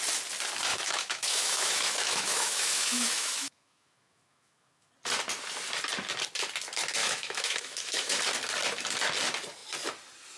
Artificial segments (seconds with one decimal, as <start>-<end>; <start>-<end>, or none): 0.7-4.9; 7.0-8.2